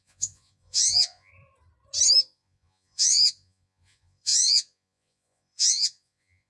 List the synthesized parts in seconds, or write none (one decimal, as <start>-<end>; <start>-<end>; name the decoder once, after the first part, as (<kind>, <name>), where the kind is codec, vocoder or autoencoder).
0.0-1.3 (vocoder, Vocos); 2.2-6.5